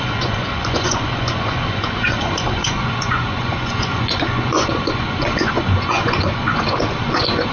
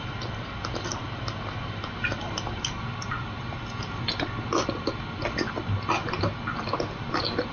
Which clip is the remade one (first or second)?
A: first